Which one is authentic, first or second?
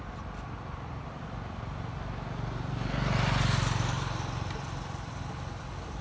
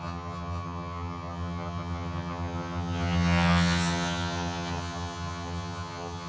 first